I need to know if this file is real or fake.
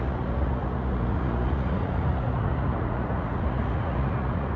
fake